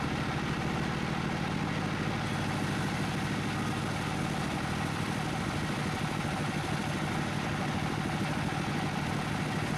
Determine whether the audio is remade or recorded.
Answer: recorded